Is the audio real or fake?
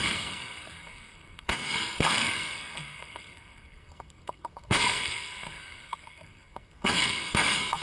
fake